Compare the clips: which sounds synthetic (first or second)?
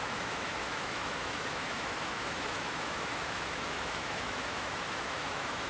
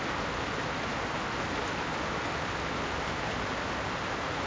first